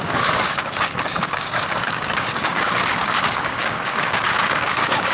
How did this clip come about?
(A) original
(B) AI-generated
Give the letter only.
B